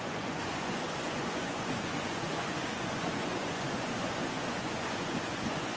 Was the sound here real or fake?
fake